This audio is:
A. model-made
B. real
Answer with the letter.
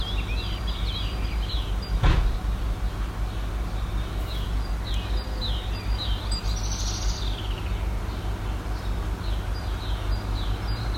B